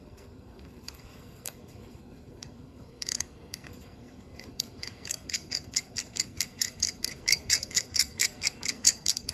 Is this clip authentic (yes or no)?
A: no